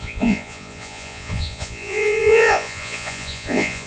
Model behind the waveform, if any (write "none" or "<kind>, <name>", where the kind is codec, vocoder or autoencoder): vocoder, Vocos